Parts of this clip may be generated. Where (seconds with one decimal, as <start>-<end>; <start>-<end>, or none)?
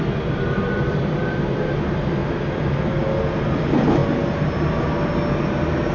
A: 0.0-2.2; 3.3-4.0